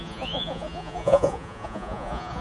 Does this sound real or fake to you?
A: fake